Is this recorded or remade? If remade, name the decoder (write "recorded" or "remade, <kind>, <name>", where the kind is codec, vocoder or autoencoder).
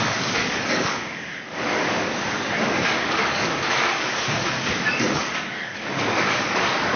remade, codec, DAC